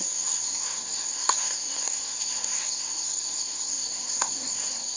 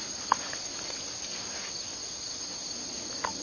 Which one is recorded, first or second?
second